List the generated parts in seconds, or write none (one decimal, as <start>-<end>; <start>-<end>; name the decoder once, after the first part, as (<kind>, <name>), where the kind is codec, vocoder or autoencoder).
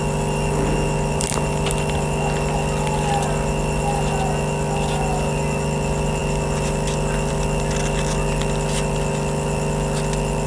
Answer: none